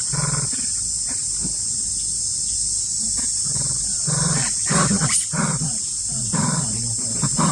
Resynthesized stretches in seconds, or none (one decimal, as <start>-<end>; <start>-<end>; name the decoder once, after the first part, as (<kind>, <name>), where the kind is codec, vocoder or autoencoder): none